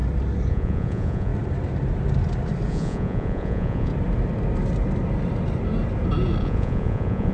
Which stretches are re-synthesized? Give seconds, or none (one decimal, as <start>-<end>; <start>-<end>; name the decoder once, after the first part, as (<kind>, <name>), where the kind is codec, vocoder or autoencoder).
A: 0.5-1.3 (vocoder, Vocos); 2.7-3.9; 6.4-7.3